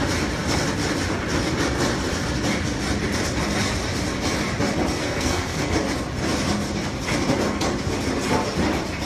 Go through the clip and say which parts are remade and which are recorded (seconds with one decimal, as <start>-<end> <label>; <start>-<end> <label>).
0.0-5.0 recorded; 5.0-5.7 remade; 5.7-9.1 recorded